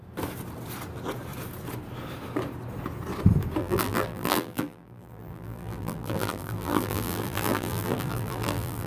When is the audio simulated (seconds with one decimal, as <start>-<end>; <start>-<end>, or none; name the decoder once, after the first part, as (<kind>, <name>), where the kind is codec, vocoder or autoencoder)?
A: 3.6-8.9 (vocoder, BigVGAN v2)